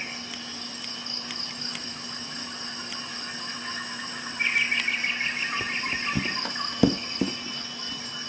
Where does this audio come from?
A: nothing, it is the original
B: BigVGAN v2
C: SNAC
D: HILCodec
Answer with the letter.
A